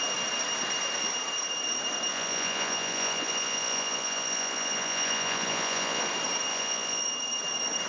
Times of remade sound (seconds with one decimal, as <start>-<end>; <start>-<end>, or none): 2.1-6.0; 6.5-7.0